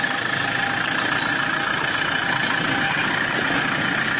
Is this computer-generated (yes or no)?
no